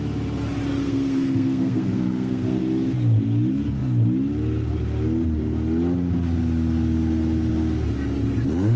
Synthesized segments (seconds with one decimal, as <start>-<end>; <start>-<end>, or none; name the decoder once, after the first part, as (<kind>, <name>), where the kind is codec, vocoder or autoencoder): 0.8-2.6 (codec, SNAC)